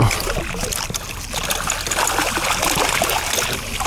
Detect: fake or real real